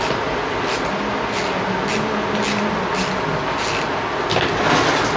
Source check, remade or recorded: recorded